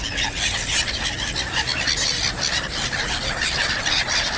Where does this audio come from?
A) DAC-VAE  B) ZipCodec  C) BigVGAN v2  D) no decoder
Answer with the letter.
D